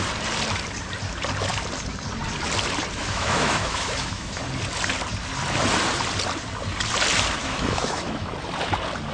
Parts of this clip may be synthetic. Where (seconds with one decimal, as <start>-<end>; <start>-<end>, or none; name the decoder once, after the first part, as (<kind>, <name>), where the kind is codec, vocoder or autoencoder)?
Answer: 3.0-4.4 (autoencoder, DAC-VAE); 7.4-8.3